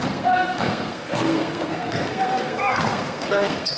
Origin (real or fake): fake